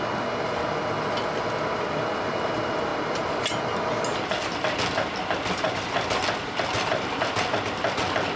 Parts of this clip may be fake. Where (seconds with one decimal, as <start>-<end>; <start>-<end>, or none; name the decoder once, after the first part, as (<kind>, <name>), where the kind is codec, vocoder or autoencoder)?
none